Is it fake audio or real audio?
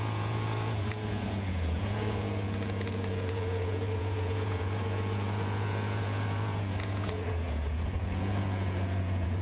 fake